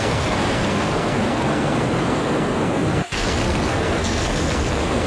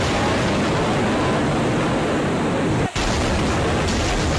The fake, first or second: first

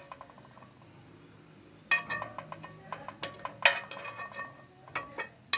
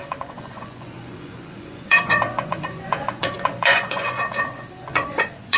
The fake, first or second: second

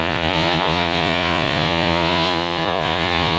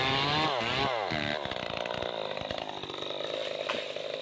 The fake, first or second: first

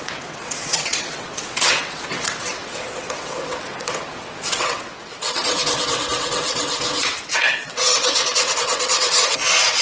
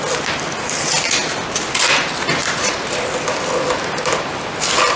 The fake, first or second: first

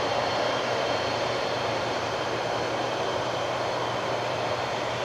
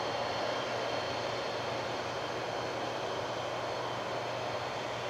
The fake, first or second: first